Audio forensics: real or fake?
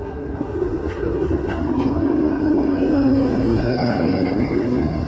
fake